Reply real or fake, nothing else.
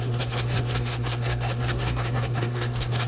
fake